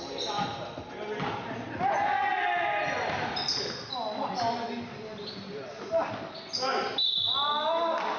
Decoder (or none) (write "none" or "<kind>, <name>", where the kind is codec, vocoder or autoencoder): none